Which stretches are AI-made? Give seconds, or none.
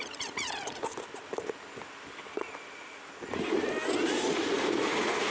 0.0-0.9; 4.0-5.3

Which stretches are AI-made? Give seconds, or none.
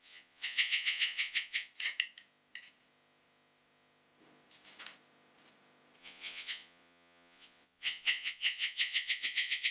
0.0-1.7; 6.0-9.7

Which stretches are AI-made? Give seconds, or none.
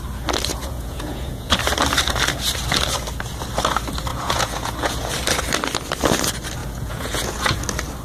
0.5-1.6; 4.1-5.1; 6.6-7.6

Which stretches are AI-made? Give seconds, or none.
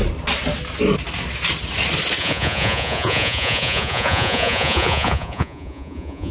2.2-6.3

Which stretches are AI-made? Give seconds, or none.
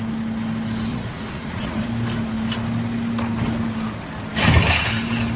0.9-1.8